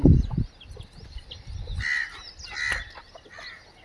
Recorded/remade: recorded